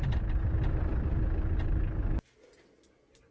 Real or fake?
real